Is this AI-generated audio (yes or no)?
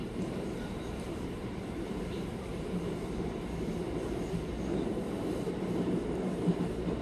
yes